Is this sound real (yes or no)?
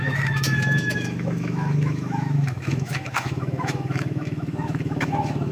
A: no